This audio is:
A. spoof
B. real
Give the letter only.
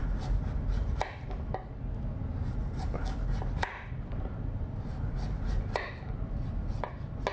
B